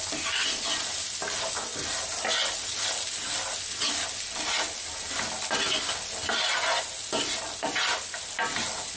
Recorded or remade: recorded